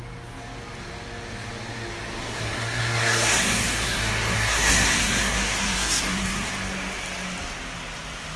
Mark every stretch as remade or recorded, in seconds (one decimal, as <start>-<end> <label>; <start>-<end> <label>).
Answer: 0.0-2.2 recorded; 2.2-6.5 remade; 6.5-8.4 recorded